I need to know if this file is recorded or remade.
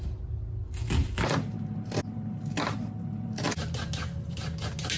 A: recorded